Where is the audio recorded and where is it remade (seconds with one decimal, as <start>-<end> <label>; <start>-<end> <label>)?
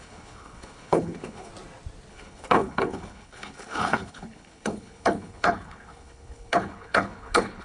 0.0-1.5 remade; 1.5-2.1 recorded; 2.1-7.6 remade